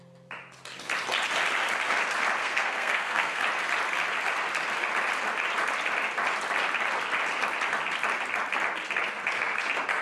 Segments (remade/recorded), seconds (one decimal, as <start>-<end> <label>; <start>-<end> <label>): 0.0-2.4 recorded; 2.4-3.4 remade; 3.4-10.0 recorded